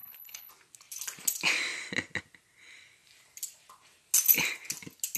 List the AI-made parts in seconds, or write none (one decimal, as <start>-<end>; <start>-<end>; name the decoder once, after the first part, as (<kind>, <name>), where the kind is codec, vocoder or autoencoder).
0.0-0.5 (codec, HILCodec)